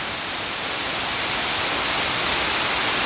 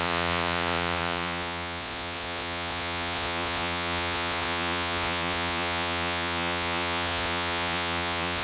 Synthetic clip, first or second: second